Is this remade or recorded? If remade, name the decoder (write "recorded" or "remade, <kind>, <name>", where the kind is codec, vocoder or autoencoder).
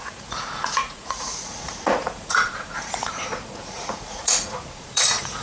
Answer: remade, vocoder, Vocos